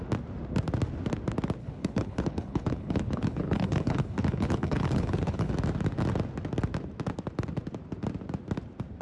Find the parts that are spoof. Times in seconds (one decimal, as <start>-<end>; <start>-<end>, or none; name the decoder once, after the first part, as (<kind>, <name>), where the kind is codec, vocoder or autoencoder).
1.6-5.5 (codec, HILCodec)